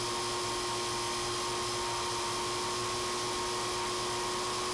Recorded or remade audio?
recorded